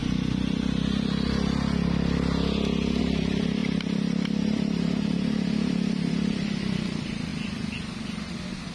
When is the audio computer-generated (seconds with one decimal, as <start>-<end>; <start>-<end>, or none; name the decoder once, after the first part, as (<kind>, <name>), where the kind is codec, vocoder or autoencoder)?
3.0-7.3 (vocoder, BigVGAN v2)